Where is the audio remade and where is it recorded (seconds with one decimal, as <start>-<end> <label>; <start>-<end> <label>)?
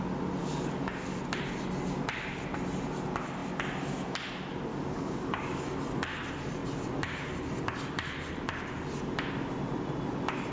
0.0-0.4 recorded; 0.4-1.2 remade; 1.2-4.7 recorded; 4.7-5.6 remade; 5.6-10.5 recorded